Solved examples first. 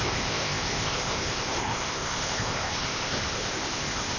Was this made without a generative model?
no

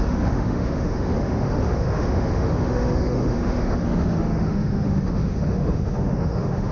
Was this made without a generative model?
no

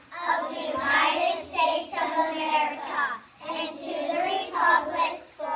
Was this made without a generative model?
yes